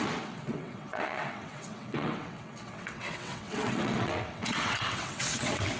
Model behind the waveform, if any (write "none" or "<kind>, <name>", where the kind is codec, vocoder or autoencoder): vocoder, WaveNeXt